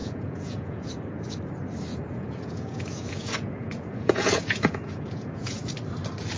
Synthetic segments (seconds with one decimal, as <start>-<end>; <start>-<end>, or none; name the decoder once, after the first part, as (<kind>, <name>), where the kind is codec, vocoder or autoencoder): 0.0-0.9 (vocoder, Vocos); 1.9-5.7